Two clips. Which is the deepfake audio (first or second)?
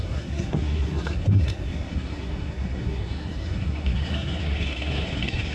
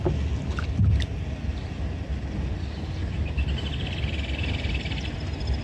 first